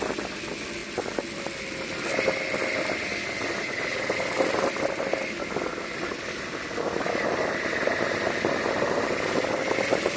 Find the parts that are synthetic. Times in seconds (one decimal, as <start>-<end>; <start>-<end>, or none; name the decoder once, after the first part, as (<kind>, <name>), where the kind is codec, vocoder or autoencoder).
none